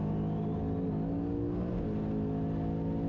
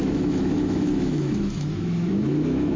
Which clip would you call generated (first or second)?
second